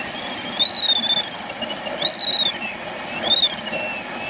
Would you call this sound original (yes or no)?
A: yes